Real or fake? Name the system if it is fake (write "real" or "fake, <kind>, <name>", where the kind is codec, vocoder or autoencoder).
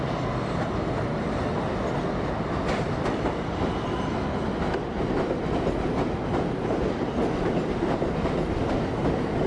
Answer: real